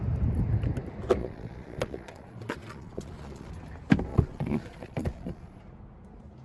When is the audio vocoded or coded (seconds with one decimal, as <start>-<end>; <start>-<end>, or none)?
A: 1.2-3.5; 4.1-5.6